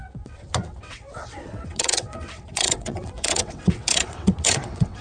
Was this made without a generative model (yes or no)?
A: no